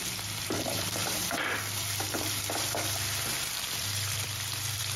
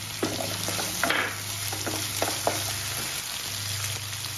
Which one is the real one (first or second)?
second